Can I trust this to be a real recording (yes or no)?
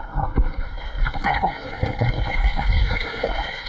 no